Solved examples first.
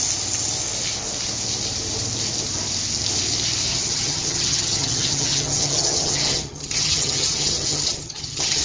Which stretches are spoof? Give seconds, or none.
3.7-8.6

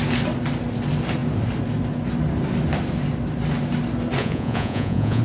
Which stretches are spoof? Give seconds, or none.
4.2-5.2

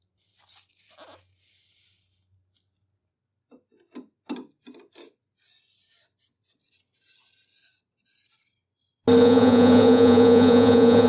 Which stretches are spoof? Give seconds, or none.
9.2-11.1

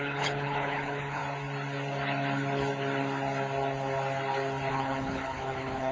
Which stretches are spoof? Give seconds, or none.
0.0-1.2; 4.7-5.9

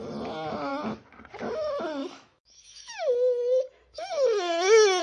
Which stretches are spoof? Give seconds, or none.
2.0-5.0